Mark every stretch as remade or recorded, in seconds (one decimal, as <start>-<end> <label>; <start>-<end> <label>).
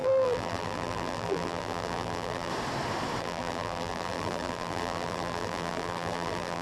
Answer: 0.0-2.5 remade; 2.5-3.2 recorded; 3.2-6.6 remade